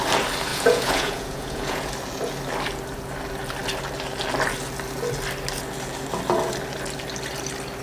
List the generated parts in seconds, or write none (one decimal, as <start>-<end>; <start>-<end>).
0.5-1.9